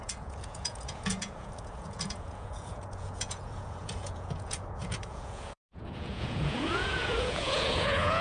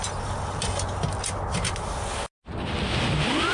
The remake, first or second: first